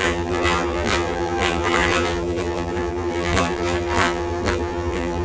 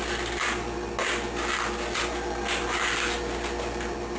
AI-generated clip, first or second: first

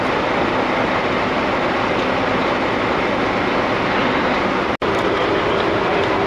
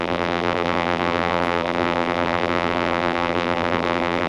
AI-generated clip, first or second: second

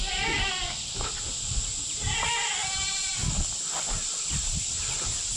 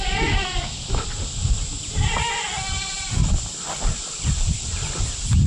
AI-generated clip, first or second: second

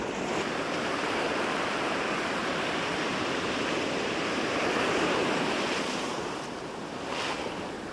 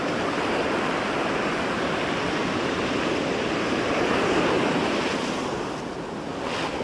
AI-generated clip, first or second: first